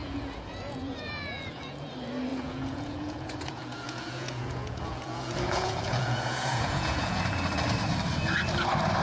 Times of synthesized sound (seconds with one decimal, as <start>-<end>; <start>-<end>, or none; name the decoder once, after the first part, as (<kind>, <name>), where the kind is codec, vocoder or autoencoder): 0.0-1.9 (vocoder, Vocos); 2.3-7.2